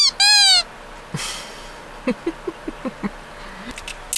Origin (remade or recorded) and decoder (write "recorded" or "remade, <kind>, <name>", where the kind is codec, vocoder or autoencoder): recorded